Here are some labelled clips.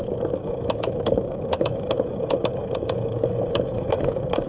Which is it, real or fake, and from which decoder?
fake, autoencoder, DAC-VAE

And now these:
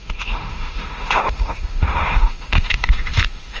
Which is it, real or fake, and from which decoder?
fake, autoencoder, DAC-VAE